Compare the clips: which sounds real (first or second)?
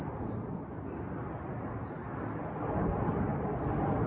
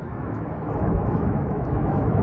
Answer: first